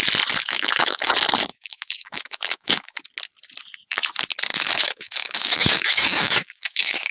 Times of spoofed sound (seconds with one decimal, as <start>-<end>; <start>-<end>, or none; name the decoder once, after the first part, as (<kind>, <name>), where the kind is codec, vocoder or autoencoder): 0.4-1.1 (autoencoder, DAC-VAE); 1.5-3.0; 4.5-7.1

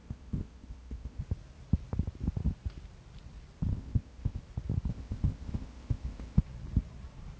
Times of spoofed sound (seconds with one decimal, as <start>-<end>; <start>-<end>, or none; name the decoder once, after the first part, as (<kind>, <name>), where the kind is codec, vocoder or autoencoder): 0.0-1.2 (codec, ZipCodec); 3.7-4.4; 4.9-6.4

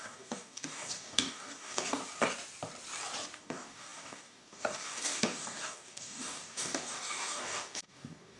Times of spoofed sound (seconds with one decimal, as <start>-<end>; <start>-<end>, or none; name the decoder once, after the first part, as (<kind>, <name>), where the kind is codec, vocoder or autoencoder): 0.0-2.0 (codec, DAC); 3.4-8.4

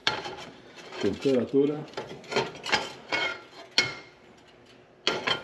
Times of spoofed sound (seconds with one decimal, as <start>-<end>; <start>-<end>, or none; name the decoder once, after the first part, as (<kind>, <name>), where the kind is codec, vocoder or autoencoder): 0.0-2.1 (vocoder, BigVGAN v2)

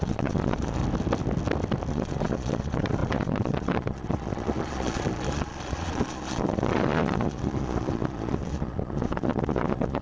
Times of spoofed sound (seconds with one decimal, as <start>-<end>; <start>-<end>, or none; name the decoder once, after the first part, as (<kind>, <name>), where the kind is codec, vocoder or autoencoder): 0.0-0.8 (vocoder, Vocos); 1.9-10.0

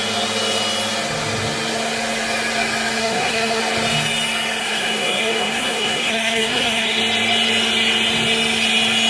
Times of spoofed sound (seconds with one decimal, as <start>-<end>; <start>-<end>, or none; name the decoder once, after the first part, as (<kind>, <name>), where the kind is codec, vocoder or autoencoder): 3.0-3.6 (codec, SNAC); 4.6-7.0

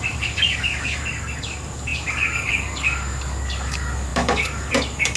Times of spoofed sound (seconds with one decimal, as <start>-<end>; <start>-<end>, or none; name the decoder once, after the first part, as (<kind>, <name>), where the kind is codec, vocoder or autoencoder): 0.0-5.2 (codec, DAC)

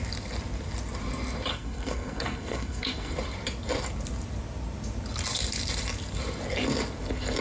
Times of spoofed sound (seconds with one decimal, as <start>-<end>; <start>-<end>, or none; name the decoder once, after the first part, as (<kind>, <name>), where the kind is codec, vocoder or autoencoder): 1.5-3.1 (codec, SNAC)